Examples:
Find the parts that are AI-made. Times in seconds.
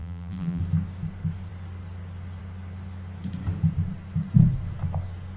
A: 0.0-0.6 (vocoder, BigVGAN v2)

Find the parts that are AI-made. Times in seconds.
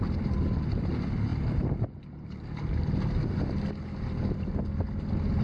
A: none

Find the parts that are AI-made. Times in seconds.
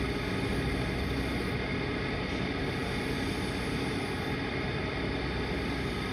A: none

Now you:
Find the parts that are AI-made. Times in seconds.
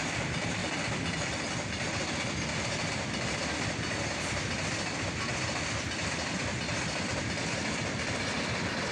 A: 2.5-4.3 (vocoder, BigVGAN v2)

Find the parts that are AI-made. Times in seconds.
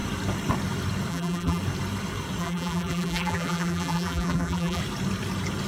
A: 1.1-1.6 (vocoder, BigVGAN v2); 2.4-4.8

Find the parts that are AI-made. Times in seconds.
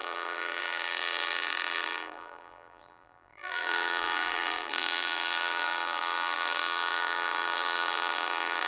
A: 0.0-8.7 (vocoder, BigVGAN v2)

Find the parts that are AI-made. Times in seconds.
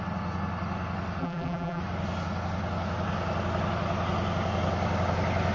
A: 1.2-1.8 (vocoder, BigVGAN v2)